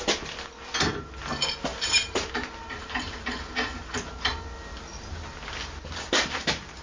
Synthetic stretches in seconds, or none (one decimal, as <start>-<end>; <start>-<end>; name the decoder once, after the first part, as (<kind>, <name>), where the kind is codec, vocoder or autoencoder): 1.7-2.3 (vocoder, BigVGAN v2); 5.6-6.8